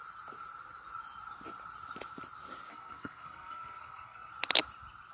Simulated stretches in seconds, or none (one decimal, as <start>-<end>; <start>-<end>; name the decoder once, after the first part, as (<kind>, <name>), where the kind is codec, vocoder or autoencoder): 2.7-4.3 (codec, SNAC)